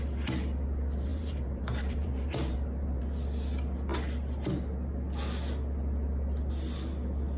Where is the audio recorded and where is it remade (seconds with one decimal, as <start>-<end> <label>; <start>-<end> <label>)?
0.0-1.1 recorded; 1.1-3.0 remade; 3.0-7.4 recorded